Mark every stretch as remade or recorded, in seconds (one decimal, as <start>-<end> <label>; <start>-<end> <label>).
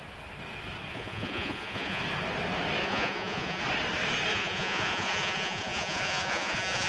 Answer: 0.0-0.9 recorded; 0.9-2.0 remade; 2.0-2.8 recorded; 2.8-3.6 remade; 3.6-4.3 recorded; 4.3-6.9 remade